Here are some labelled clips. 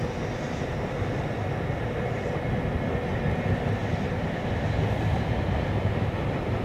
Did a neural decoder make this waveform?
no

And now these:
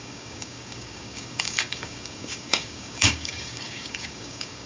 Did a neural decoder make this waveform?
yes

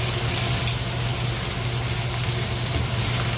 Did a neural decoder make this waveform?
no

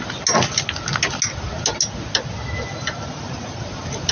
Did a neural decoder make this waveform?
no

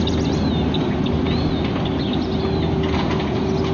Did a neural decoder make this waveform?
no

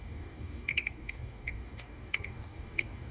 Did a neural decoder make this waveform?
yes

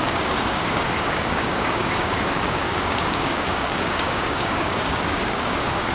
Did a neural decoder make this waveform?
yes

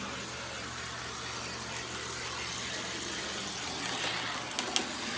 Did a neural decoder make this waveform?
no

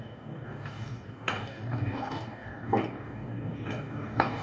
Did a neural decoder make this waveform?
yes